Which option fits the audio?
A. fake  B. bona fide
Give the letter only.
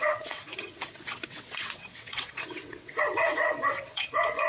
A